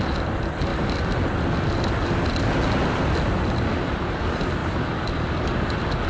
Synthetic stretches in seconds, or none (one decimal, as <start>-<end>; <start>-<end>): none